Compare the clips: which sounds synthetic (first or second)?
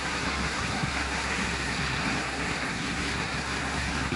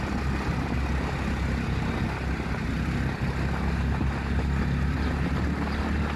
first